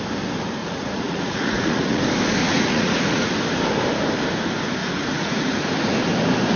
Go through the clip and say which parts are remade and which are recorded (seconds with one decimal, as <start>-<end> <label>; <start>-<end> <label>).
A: 0.0-0.6 recorded; 0.6-2.0 remade; 2.0-2.4 recorded; 2.4-3.3 remade; 3.3-4.8 recorded; 4.8-5.7 remade; 5.7-6.6 recorded